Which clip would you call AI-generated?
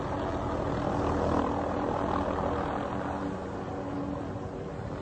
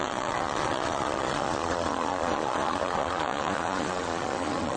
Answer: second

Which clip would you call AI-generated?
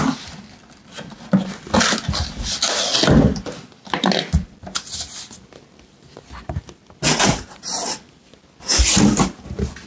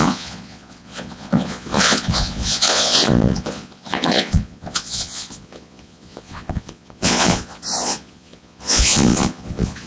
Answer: second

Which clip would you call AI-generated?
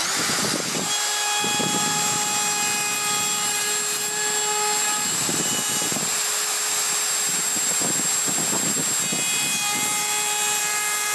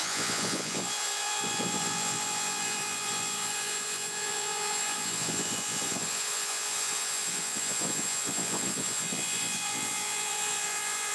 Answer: second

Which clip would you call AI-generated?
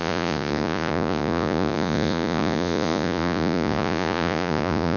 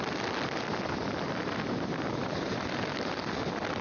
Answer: first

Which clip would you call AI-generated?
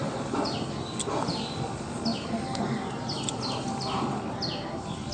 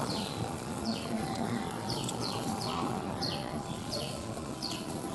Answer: second